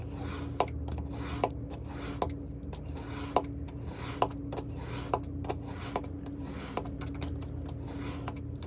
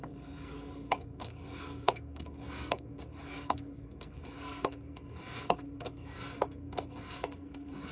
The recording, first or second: first